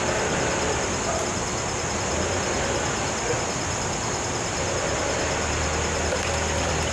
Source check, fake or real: real